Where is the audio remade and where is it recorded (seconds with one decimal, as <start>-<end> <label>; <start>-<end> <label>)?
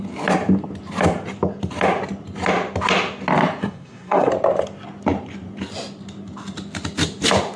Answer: 0.0-3.6 recorded; 3.6-4.3 remade; 4.3-7.6 recorded